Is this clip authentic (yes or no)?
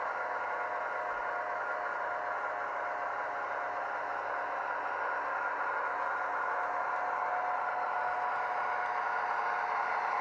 yes